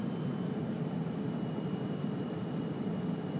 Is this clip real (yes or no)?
yes